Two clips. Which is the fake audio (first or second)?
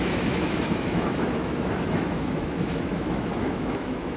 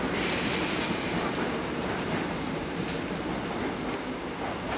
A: first